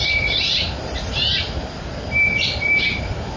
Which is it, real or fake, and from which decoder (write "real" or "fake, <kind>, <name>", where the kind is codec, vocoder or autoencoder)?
fake, vocoder, BigVGAN v2